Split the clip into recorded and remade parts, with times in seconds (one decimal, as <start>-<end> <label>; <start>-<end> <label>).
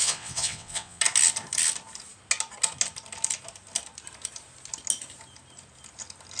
0.0-1.0 remade; 1.0-6.4 recorded